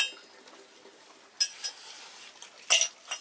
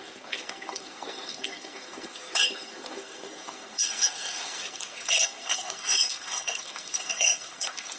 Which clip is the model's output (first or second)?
second